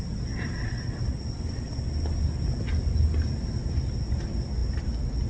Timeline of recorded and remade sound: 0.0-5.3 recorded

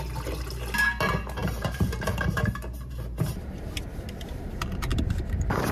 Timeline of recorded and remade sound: 0.0-1.4 recorded; 1.4-3.7 remade; 3.7-4.9 recorded; 4.9-5.7 remade